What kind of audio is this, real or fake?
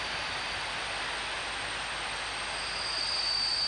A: real